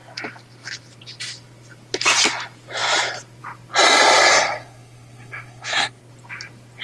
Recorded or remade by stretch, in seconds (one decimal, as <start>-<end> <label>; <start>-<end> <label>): 0.0-4.3 recorded; 4.3-6.0 remade; 6.0-6.8 recorded